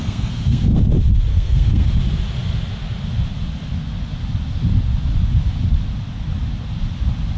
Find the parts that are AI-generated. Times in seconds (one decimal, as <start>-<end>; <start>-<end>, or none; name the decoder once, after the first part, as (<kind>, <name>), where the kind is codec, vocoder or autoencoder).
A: 0.0-0.8 (codec, SNAC); 1.3-2.0